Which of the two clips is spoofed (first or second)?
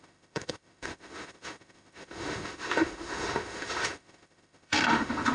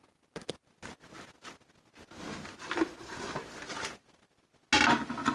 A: first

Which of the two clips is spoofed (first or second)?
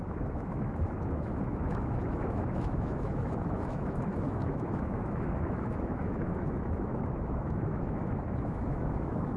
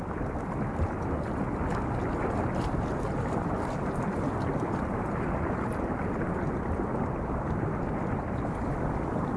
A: first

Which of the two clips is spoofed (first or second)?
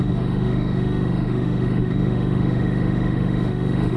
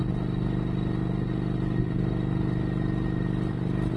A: first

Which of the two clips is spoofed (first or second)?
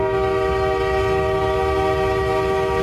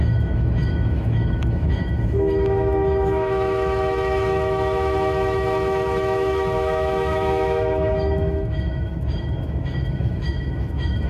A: second